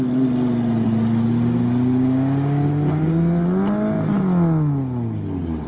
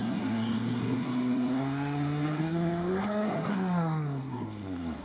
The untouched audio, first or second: first